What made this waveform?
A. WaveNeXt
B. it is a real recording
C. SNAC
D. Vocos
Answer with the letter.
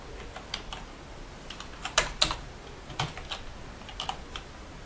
B